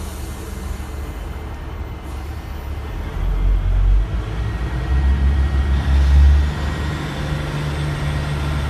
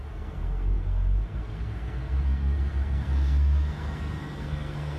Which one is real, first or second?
first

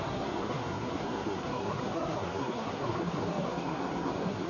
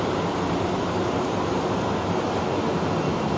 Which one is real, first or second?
second